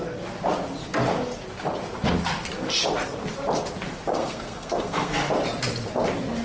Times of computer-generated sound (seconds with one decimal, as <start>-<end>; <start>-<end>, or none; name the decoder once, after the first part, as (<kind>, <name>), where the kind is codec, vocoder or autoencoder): 4.1-5.1 (codec, SNAC)